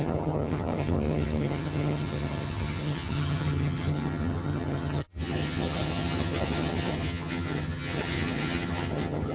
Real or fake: fake